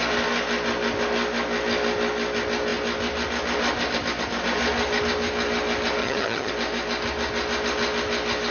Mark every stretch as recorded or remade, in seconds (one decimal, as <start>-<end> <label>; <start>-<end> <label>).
0.0-6.0 recorded; 6.0-6.5 remade; 6.5-8.5 recorded